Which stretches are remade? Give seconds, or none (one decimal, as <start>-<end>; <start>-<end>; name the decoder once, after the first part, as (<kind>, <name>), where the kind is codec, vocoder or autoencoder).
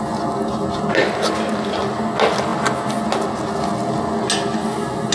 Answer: none